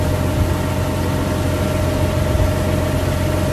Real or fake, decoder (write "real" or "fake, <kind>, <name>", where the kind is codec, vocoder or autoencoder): real